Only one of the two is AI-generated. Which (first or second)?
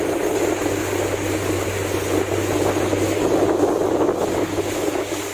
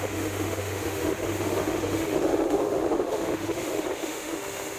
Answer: second